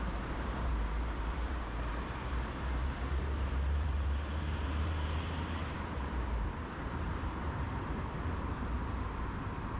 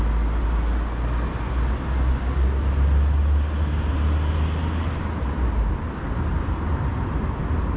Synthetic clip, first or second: first